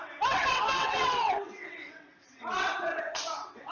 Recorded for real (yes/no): no